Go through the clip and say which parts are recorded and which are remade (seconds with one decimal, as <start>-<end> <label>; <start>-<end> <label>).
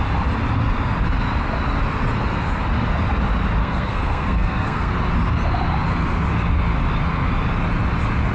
0.0-3.6 recorded; 3.6-4.9 remade; 4.9-8.3 recorded